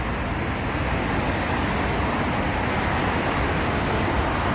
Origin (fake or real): real